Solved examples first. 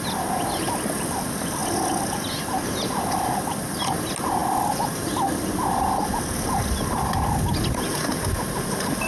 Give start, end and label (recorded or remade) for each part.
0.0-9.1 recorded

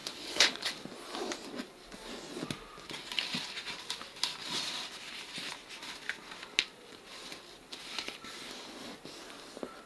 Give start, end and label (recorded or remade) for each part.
0.0-0.7 remade; 0.7-9.9 recorded

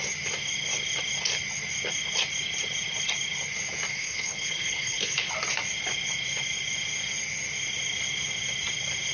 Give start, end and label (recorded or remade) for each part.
0.0-3.9 recorded; 3.9-5.3 remade; 5.3-9.1 recorded

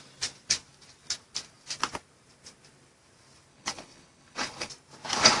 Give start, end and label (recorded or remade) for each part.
0.0-3.5 recorded; 3.5-4.7 remade; 4.7-5.4 recorded